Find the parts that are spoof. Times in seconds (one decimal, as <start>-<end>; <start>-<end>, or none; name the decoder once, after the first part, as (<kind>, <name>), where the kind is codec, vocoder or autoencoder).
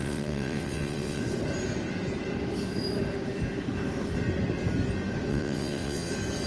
0.0-1.2 (vocoder, WaveNeXt); 5.3-6.1